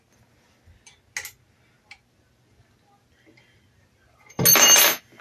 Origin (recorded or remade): recorded